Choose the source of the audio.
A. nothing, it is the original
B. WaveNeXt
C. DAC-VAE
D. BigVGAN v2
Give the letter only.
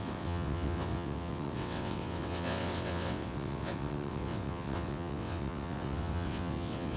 B